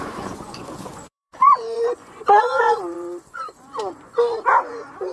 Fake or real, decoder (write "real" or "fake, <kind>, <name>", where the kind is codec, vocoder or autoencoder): fake, vocoder, Vocos